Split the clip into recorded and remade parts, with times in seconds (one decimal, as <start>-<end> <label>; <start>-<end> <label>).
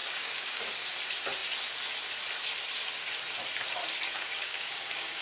0.0-0.7 remade; 0.7-4.1 recorded; 4.1-5.2 remade